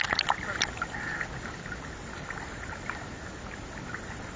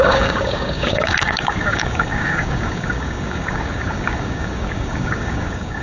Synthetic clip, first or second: second